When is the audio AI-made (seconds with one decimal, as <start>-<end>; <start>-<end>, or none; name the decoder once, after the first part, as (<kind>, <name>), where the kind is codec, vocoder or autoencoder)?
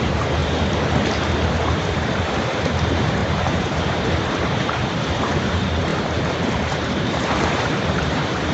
0.0-0.4 (vocoder, BigVGAN v2); 1.5-5.9; 6.5-8.5